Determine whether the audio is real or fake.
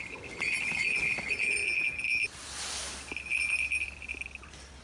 real